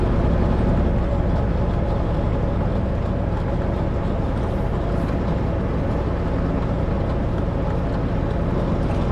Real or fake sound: real